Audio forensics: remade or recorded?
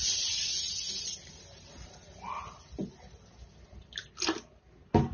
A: recorded